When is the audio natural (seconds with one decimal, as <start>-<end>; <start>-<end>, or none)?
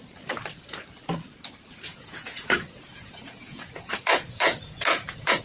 0.0-1.9